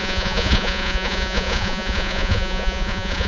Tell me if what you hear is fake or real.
fake